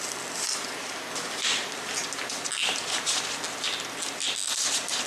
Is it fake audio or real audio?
real